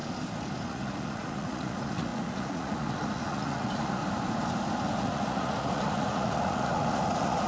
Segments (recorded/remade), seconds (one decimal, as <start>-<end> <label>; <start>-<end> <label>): 0.0-0.7 recorded; 0.7-4.0 remade; 4.0-5.0 recorded; 5.0-7.5 remade